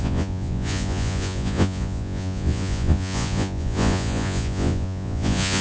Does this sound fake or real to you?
fake